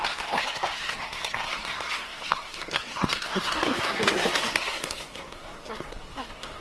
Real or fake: fake